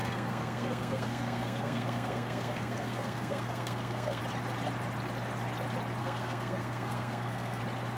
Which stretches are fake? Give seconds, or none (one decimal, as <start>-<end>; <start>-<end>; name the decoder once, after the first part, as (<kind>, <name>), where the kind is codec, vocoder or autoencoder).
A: 0.0-4.2 (codec, SNAC); 6.0-7.6

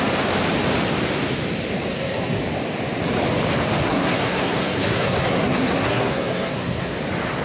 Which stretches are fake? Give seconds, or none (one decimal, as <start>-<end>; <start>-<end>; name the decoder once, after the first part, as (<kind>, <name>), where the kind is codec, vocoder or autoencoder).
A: 1.9-2.4 (codec, SNAC); 3.8-7.0

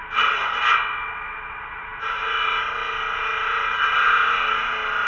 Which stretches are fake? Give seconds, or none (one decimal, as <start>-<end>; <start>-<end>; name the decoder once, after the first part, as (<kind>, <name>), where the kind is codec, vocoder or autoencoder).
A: none